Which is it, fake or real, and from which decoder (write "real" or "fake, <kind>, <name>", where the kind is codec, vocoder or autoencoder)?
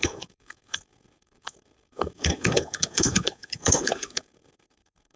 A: fake, codec, SNAC